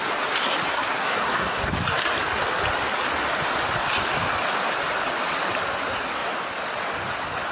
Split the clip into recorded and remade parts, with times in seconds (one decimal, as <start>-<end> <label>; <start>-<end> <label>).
0.0-0.7 recorded; 0.7-1.7 remade; 1.7-7.5 recorded